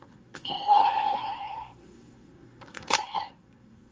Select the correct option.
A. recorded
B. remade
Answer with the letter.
B